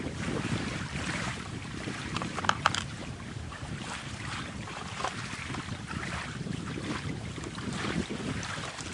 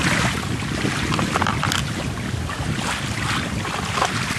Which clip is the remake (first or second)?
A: first